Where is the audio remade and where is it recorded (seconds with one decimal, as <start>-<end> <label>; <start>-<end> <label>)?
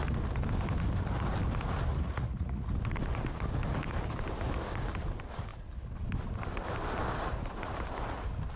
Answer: 0.0-1.9 recorded; 1.9-2.7 remade; 2.7-8.6 recorded